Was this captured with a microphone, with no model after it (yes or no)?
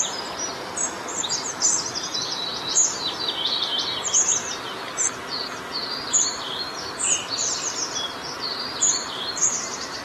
no